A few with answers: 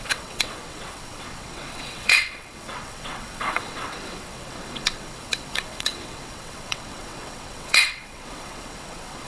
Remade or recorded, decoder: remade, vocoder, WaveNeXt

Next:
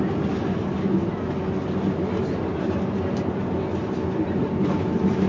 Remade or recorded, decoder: recorded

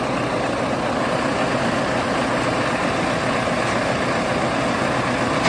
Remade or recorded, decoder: recorded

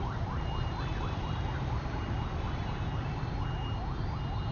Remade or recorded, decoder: recorded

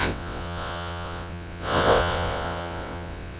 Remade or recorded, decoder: remade, vocoder, WaveNeXt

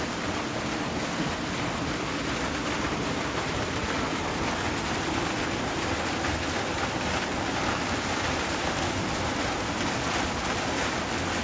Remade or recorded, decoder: recorded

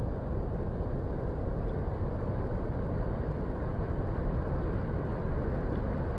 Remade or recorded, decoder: recorded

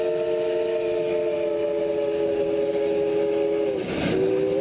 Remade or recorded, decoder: recorded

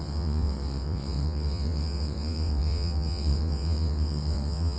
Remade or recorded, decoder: remade, vocoder, WaveNeXt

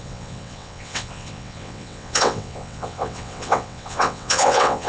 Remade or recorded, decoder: remade, vocoder, WaveNeXt